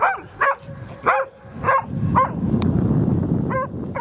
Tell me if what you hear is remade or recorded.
recorded